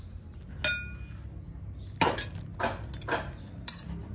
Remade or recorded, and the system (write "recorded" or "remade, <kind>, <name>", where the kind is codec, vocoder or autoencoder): recorded